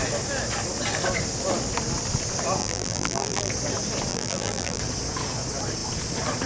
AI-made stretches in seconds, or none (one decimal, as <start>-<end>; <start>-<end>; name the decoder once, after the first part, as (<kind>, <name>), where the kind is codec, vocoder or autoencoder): 2.6-3.5 (vocoder, BigVGAN v2); 4.1-4.8